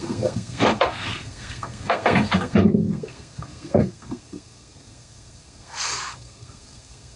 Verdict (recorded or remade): remade